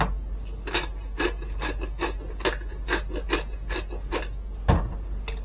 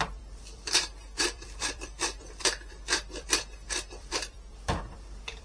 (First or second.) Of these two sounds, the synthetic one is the second